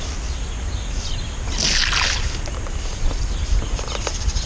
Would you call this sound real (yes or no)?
yes